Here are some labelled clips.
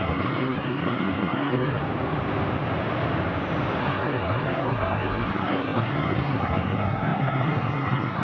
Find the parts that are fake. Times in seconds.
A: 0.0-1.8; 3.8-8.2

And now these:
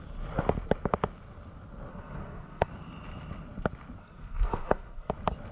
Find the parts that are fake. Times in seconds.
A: 1.9-2.7; 4.0-5.1

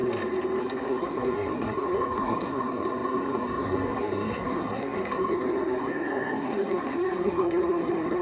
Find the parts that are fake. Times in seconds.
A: 0.6-8.2

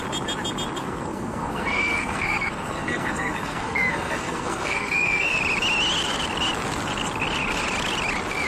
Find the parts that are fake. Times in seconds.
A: 0.8-5.4